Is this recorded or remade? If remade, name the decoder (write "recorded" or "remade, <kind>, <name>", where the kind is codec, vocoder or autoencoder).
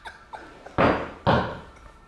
recorded